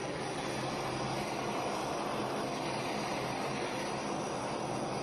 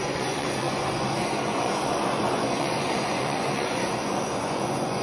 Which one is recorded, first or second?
first